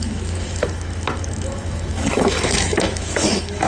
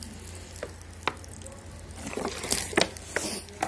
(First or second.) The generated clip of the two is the first